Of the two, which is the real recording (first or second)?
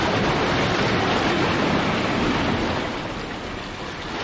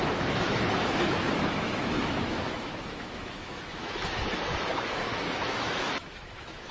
first